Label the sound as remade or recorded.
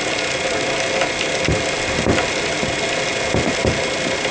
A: recorded